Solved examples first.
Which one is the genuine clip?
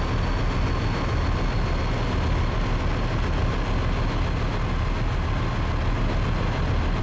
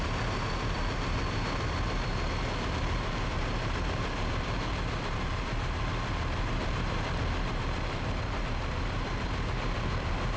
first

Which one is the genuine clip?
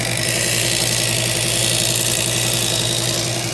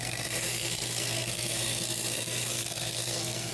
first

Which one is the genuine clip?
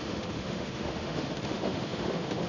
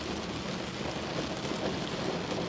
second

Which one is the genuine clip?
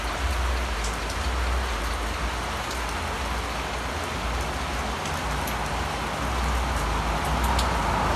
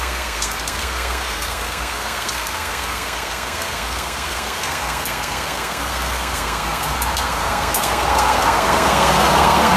first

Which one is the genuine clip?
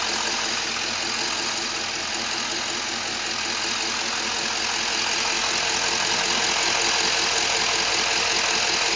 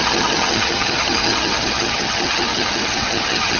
first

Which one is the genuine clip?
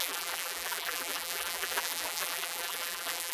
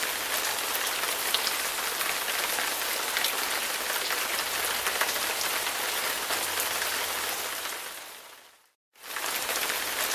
second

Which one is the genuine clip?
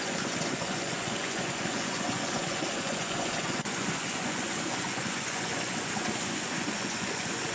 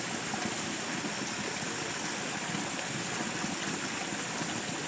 second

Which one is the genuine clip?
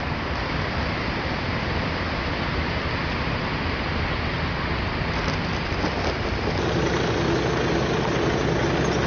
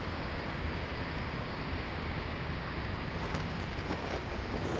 first